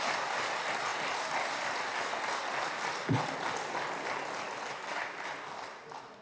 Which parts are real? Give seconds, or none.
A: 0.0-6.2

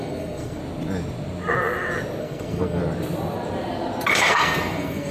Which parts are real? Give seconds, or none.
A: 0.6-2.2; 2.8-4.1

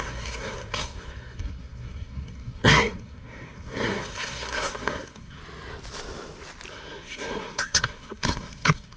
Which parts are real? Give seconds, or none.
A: 5.4-6.7